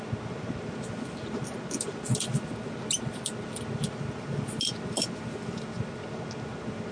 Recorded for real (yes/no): yes